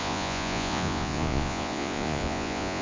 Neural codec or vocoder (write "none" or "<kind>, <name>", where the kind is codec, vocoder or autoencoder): vocoder, Vocos